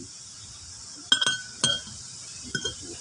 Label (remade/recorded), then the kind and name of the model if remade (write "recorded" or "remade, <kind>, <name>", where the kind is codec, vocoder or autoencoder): recorded